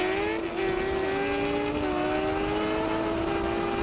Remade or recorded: recorded